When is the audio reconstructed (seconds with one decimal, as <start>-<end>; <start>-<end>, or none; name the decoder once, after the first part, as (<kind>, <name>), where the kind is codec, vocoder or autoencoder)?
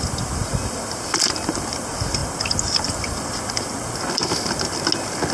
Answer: none